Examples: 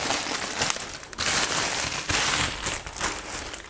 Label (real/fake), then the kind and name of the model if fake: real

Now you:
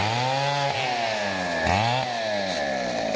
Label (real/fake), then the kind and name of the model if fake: real